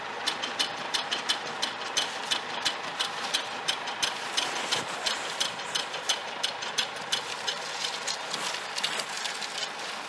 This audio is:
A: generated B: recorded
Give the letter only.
A